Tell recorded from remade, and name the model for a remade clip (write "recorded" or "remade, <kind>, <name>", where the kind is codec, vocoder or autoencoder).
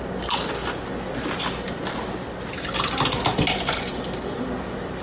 recorded